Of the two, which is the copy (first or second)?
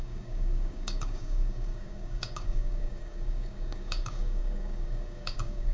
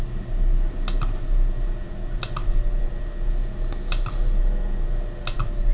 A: first